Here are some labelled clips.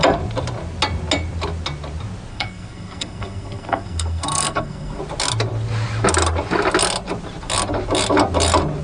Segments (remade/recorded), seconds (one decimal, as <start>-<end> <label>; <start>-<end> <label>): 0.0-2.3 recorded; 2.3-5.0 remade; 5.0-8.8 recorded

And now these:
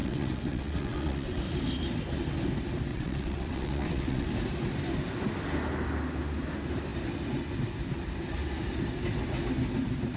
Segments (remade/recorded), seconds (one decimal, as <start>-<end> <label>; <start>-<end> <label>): 0.0-1.4 remade; 1.4-2.9 recorded; 2.9-4.3 remade; 4.3-10.2 recorded

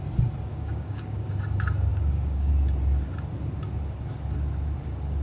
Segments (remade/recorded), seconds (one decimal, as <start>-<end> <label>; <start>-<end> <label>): 0.0-0.5 recorded; 0.5-1.3 remade; 1.3-1.9 recorded; 1.9-2.5 remade; 2.5-5.2 recorded

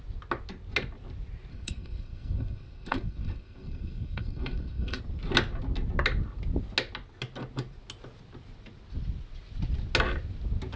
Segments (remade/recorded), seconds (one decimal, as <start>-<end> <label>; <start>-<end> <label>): 0.0-1.5 recorded; 1.5-5.0 remade; 5.0-10.8 recorded